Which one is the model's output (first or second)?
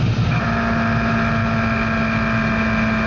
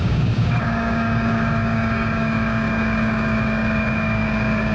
second